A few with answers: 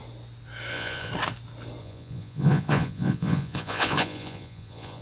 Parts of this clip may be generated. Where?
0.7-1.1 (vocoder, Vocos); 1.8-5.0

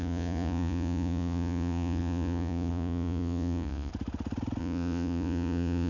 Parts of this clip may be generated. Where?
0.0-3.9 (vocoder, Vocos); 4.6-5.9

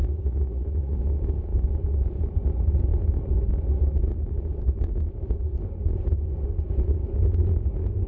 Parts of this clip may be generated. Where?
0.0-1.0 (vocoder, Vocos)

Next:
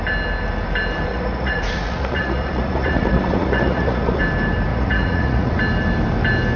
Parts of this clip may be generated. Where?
1.1-4.2 (vocoder, Vocos); 4.7-5.6

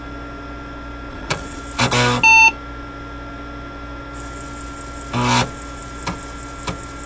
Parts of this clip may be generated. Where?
1.1-1.6 (vocoder, Vocos)

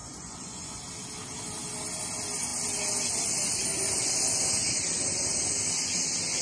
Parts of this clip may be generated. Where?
0.0-0.8 (vocoder, Vocos)

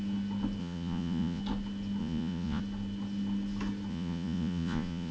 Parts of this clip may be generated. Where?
0.6-1.4 (vocoder, Vocos); 2.0-2.6; 3.9-5.1

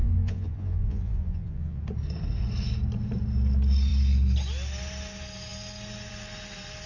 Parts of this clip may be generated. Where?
0.0-1.8 (vocoder, Vocos)